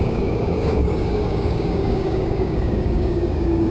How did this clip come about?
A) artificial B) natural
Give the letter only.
A